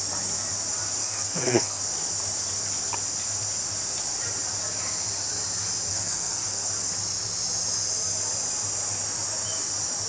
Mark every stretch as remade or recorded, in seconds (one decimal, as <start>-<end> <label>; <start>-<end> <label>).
0.0-1.0 recorded; 1.0-1.8 remade; 1.8-5.9 recorded; 5.9-6.7 remade; 6.7-10.1 recorded